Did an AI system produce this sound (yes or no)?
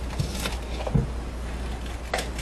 no